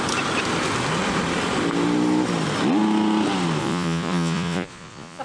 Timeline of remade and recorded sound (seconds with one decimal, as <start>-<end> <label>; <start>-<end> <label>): 0.0-3.6 recorded; 3.6-5.2 remade